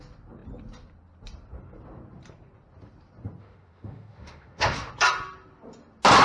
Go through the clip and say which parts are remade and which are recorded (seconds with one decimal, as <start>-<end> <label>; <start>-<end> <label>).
0.0-3.4 recorded; 3.4-4.9 remade; 4.9-6.2 recorded